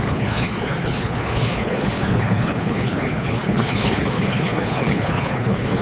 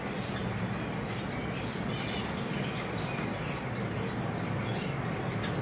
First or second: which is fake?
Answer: first